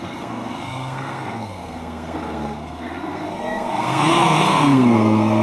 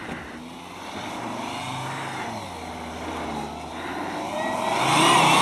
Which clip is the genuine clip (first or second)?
second